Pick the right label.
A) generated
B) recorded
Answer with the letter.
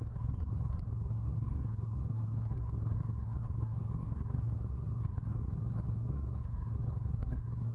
A